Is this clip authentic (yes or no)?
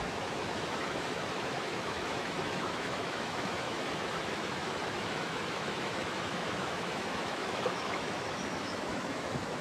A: no